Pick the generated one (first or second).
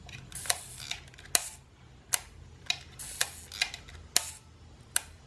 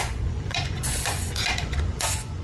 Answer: second